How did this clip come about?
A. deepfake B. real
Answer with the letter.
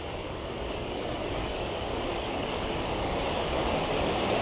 A